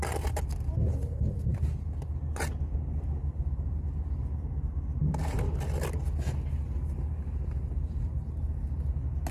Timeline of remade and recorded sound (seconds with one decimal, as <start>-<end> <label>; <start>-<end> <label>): 0.0-9.3 recorded